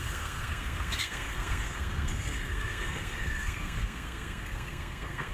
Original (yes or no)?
no